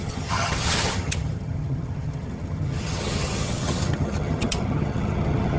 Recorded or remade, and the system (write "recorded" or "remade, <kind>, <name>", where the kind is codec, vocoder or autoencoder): remade, vocoder, HiFi-GAN